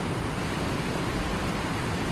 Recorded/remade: recorded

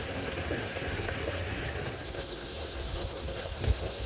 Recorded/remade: remade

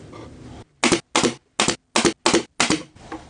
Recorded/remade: recorded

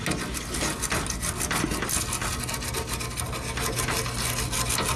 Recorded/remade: recorded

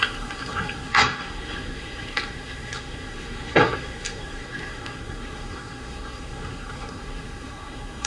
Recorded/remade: remade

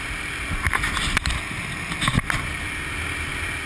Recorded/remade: recorded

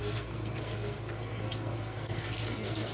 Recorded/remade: remade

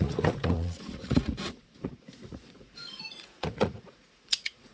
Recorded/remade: remade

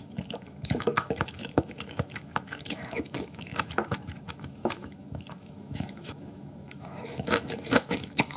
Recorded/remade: remade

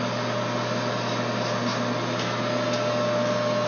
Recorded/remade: recorded